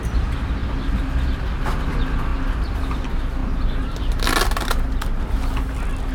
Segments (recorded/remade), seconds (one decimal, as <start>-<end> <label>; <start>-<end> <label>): 0.0-2.3 recorded; 2.3-2.8 remade; 2.8-6.1 recorded